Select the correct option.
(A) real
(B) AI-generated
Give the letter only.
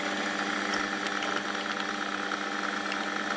A